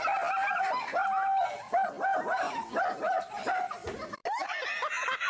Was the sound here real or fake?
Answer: real